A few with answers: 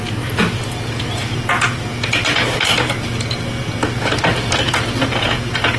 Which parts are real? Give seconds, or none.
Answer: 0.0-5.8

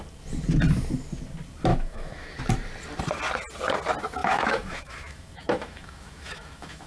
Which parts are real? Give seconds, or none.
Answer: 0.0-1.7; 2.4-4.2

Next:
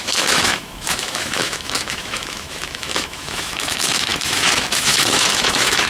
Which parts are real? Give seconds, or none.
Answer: none

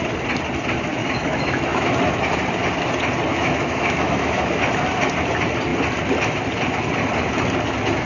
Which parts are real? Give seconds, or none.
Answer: 0.0-1.0; 1.9-3.3; 4.6-8.1